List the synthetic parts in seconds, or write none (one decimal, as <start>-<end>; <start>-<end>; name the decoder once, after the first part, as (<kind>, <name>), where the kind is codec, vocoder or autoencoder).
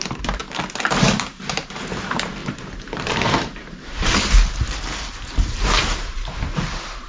0.0-0.4 (vocoder, BigVGAN v2); 1.0-7.1